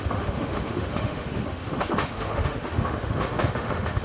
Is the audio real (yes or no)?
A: no